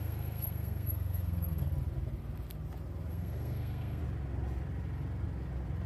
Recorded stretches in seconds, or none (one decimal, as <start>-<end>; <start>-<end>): 1.7-3.1; 4.0-5.9